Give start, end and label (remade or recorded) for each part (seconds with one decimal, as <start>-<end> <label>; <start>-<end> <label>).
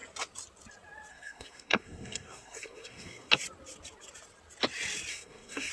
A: 0.0-1.1 recorded; 1.1-3.3 remade; 3.3-5.1 recorded; 5.1-5.7 remade